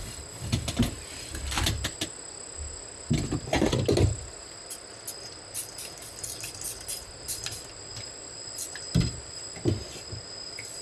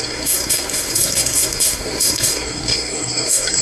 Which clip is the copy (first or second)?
second